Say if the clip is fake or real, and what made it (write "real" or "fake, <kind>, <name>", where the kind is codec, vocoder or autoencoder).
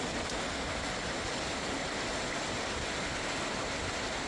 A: real